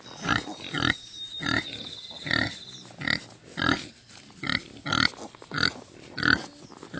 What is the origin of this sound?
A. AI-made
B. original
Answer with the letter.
B